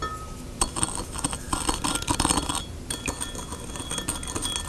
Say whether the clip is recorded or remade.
recorded